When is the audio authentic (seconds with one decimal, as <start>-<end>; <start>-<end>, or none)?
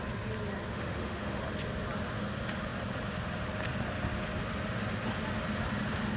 0.0-0.7; 1.4-6.2